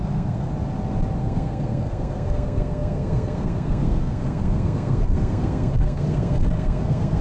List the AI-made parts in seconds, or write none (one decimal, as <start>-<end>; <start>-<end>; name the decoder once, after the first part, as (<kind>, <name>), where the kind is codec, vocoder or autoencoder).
0.0-0.5 (codec, SNAC); 1.2-7.2